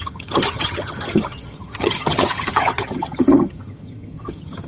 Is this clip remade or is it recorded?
remade